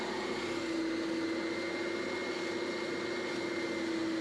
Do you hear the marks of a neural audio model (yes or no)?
no